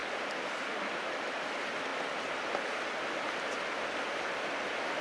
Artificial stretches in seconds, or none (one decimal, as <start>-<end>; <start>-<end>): none